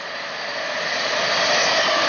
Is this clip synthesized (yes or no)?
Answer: no